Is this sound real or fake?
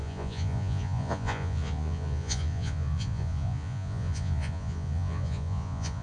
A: fake